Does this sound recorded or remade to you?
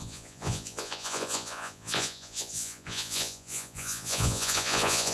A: remade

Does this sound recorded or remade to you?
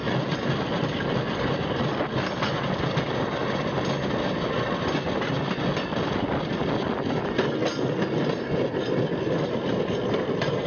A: recorded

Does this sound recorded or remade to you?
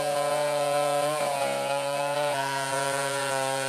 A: remade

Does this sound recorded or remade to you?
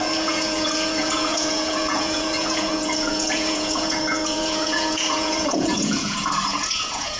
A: remade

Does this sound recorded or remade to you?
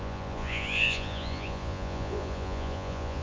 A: remade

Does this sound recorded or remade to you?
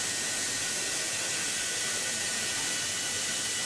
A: recorded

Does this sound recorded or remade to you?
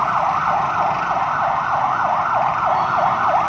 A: recorded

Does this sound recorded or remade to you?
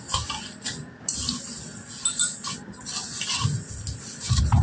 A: recorded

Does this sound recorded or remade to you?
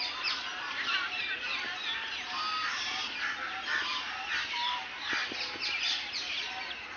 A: recorded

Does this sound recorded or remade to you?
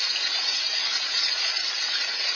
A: remade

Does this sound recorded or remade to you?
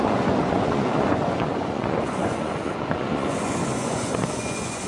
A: remade